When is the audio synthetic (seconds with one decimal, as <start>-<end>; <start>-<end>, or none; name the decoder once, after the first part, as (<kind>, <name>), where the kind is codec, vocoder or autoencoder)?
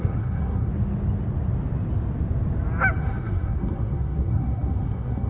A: 0.0-0.7 (codec, SNAC); 3.0-5.3